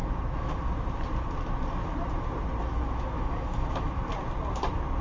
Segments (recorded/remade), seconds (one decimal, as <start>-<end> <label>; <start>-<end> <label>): 0.0-0.7 remade; 0.7-2.6 recorded; 2.6-4.0 remade; 4.0-5.0 recorded